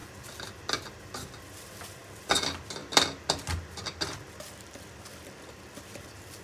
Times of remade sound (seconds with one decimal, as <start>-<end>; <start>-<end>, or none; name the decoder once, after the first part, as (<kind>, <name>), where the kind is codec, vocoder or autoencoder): none